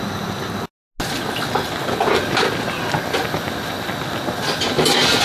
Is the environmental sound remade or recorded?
recorded